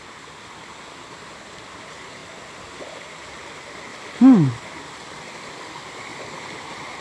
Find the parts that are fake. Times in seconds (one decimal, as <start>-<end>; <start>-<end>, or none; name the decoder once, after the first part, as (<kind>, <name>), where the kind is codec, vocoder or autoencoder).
none